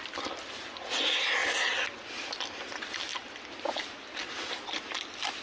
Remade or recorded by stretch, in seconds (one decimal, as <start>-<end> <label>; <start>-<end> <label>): 0.0-5.4 recorded